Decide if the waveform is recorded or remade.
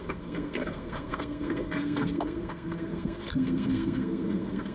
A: remade